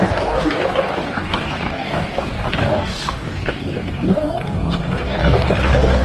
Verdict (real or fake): fake